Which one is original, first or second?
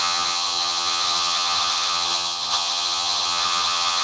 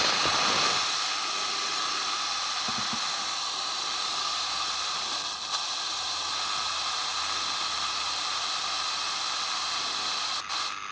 second